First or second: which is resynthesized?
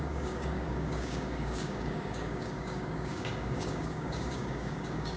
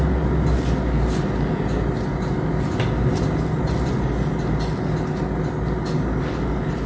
first